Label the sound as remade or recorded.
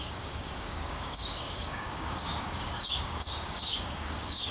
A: remade